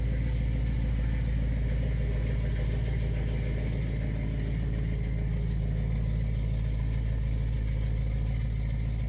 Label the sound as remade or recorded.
recorded